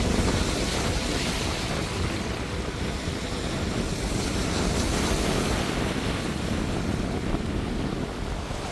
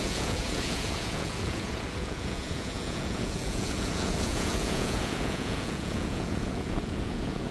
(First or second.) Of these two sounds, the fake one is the second